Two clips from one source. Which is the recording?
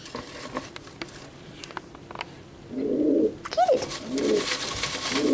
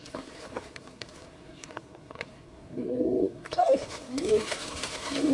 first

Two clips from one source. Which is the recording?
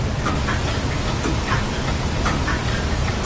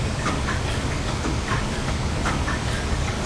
first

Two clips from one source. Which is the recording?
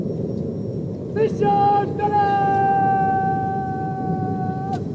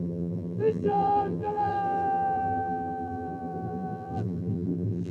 first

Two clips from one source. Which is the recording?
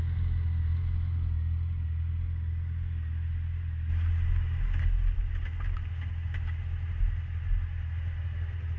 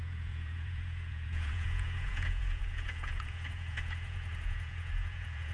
first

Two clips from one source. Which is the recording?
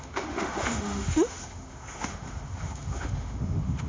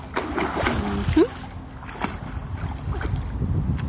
second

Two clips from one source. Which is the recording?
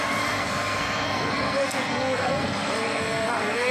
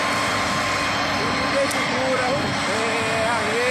second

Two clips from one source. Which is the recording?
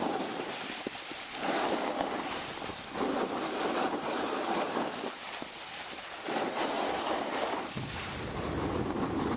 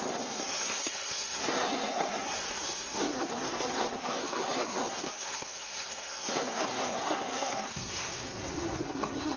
first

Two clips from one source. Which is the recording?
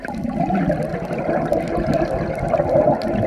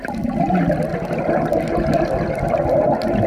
second